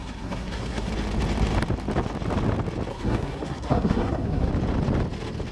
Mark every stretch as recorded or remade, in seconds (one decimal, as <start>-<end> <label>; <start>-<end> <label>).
0.0-0.9 remade; 0.9-2.9 recorded; 2.9-4.5 remade; 4.5-5.5 recorded